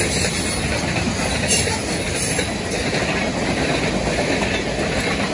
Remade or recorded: recorded